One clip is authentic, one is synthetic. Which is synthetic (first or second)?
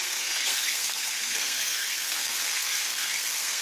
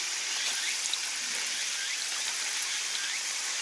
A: first